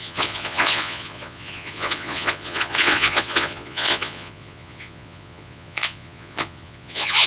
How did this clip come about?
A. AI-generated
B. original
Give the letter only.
A